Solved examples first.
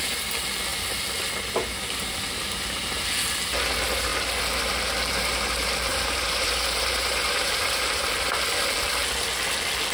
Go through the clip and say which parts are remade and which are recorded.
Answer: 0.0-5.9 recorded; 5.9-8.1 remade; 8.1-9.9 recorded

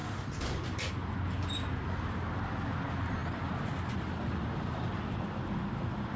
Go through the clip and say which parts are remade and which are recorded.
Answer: 0.0-6.2 recorded

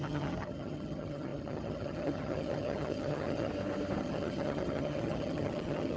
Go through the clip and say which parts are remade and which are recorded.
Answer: 0.0-3.5 remade; 3.5-4.0 recorded; 4.0-6.0 remade

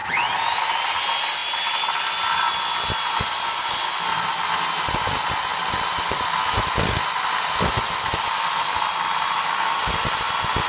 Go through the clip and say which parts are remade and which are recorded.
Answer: 0.0-10.7 recorded

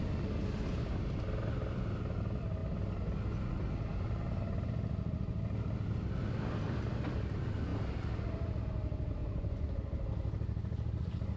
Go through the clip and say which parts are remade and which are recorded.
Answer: 0.0-9.2 recorded; 9.2-9.8 remade; 9.8-11.4 recorded

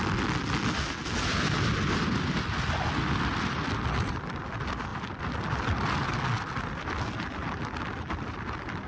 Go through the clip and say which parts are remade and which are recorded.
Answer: 0.0-8.9 recorded